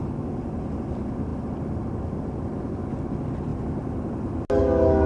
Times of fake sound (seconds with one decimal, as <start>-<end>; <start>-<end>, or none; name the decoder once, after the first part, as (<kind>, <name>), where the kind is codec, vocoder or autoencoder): none